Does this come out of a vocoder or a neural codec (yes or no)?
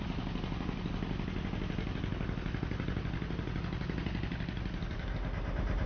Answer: no